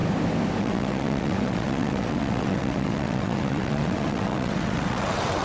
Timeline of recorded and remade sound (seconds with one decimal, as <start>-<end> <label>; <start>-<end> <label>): 0.0-0.6 recorded; 0.6-5.4 remade